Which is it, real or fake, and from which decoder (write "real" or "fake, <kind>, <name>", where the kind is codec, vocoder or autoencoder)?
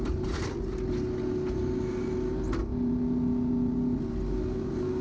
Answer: real